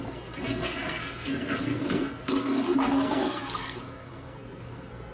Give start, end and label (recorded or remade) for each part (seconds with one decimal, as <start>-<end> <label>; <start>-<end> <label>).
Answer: 0.0-5.1 remade